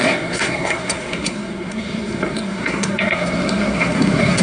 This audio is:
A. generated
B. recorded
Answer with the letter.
A